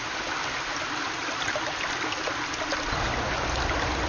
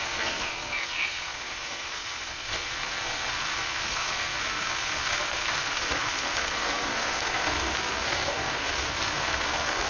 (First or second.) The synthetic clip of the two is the second